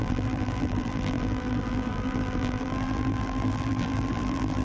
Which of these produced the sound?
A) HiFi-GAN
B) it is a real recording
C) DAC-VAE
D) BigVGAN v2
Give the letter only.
D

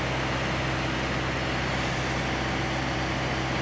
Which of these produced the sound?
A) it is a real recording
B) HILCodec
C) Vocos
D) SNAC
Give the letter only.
A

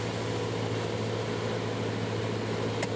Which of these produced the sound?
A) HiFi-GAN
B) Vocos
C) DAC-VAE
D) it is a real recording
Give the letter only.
D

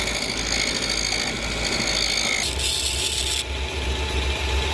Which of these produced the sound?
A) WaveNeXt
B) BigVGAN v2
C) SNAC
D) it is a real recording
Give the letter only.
D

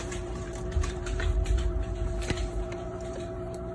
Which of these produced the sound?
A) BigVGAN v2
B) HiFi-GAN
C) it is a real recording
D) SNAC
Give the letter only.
A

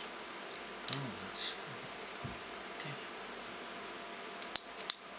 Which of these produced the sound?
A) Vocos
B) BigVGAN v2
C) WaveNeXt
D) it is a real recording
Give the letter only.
D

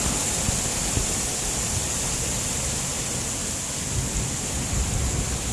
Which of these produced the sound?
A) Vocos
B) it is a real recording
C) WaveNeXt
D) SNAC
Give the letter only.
B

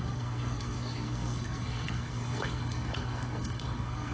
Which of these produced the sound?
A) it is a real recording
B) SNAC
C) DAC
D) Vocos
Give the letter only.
B